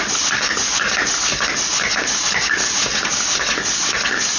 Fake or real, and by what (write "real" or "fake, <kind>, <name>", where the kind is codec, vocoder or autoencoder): real